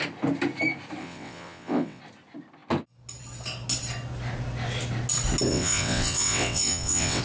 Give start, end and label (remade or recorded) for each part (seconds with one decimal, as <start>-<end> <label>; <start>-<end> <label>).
0.0-1.0 recorded; 1.0-2.0 remade; 2.0-5.5 recorded; 5.5-7.2 remade

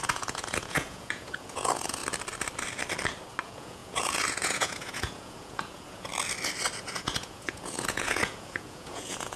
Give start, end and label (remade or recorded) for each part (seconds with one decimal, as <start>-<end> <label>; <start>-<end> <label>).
0.0-2.0 remade; 2.0-3.4 recorded; 3.4-6.1 remade; 6.1-6.8 recorded; 6.8-9.4 remade

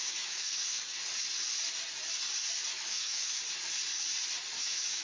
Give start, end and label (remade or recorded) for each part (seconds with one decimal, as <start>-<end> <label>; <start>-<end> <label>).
0.0-0.9 remade; 0.9-2.7 recorded; 2.7-3.4 remade; 3.4-4.6 recorded; 4.6-5.0 remade

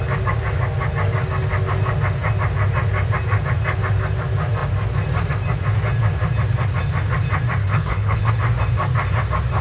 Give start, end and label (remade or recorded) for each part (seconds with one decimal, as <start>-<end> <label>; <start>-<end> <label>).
0.0-7.6 recorded; 7.6-8.3 remade; 8.3-9.6 recorded

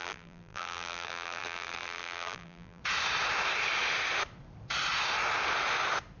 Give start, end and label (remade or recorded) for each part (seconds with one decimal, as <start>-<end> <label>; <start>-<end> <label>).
0.0-2.8 remade; 2.8-6.2 recorded